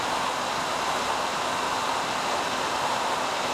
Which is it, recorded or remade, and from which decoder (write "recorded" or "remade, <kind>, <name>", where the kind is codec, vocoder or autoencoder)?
recorded